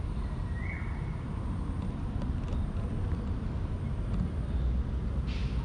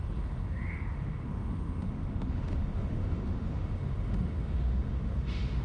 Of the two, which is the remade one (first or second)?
second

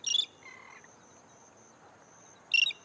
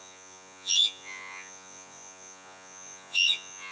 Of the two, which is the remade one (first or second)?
second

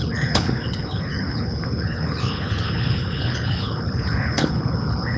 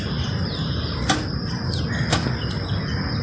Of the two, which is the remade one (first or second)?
first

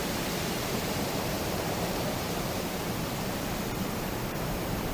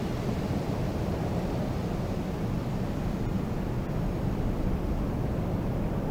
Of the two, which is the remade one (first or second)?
first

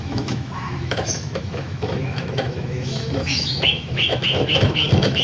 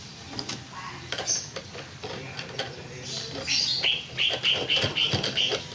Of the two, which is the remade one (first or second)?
first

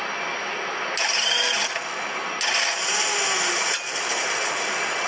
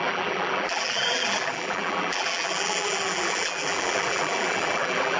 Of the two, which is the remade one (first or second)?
second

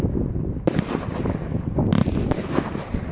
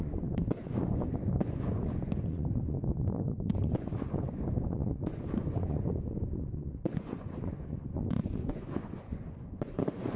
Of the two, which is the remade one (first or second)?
second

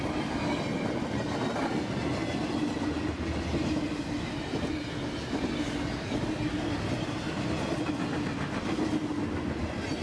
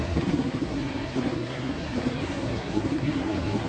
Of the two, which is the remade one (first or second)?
second